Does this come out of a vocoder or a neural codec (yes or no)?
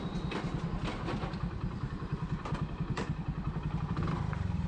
yes